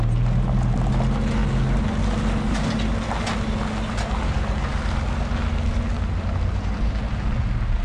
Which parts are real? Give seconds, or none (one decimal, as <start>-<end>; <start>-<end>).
0.0-7.8